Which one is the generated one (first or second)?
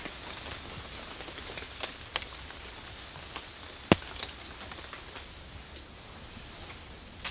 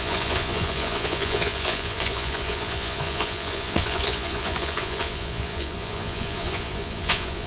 second